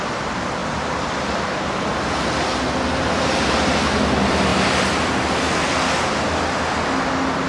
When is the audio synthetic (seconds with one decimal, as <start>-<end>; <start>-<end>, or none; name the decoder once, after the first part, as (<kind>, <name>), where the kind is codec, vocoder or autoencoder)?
0.6-2.1 (vocoder, BigVGAN v2)